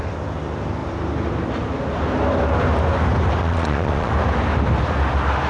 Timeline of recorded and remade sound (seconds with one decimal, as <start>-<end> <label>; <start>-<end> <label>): 0.0-3.4 recorded; 3.4-4.1 remade; 4.1-5.5 recorded